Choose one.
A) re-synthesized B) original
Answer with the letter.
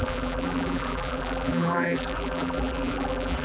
A